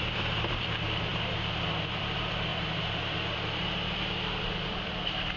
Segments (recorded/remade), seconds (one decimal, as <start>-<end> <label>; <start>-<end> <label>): 0.0-5.4 remade

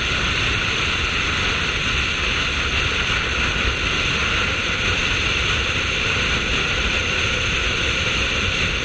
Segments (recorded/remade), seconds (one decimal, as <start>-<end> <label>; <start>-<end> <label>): 0.0-5.0 recorded; 5.0-6.5 remade; 6.5-8.8 recorded